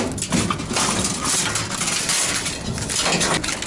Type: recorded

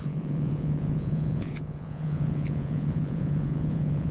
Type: remade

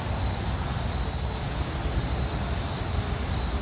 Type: recorded